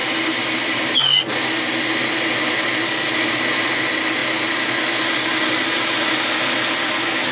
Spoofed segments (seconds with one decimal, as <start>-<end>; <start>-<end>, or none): none